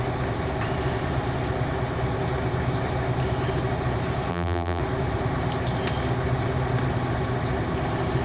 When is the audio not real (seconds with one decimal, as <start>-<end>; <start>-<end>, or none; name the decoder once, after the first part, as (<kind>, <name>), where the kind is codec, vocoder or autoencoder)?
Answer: 4.3-4.8 (vocoder, BigVGAN v2)